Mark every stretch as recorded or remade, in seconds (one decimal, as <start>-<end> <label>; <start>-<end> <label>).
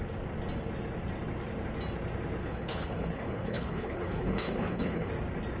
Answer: 0.0-2.4 recorded; 2.4-5.1 remade; 5.1-5.6 recorded